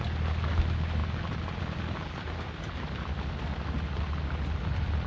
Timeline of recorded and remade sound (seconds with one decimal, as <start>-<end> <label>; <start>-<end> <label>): 0.0-5.1 recorded